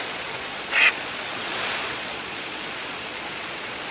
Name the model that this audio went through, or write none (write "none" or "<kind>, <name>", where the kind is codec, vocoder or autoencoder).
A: vocoder, Vocos